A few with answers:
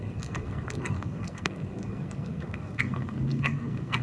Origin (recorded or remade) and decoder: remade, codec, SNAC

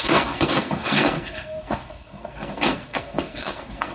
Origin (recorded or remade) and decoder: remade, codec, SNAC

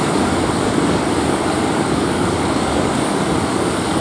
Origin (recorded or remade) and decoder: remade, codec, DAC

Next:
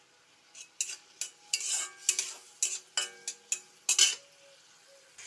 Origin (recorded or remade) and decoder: recorded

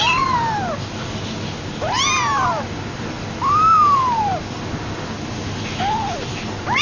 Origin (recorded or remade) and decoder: recorded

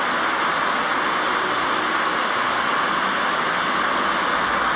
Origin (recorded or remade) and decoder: recorded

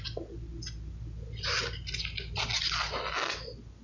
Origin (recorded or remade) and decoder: recorded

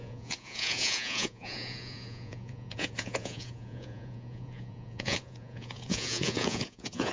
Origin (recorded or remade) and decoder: remade, vocoder, Vocos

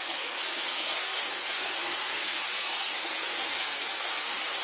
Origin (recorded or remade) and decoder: remade, codec, SNAC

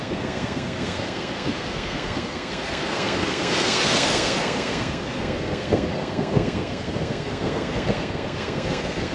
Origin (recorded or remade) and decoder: remade, codec, SNAC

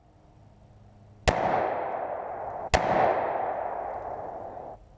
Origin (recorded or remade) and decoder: recorded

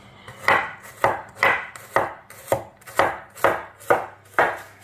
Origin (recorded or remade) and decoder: recorded